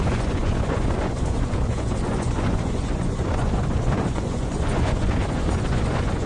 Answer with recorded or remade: remade